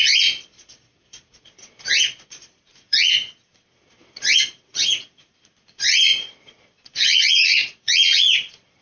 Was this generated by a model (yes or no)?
yes